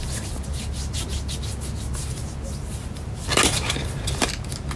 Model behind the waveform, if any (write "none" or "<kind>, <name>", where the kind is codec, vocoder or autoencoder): none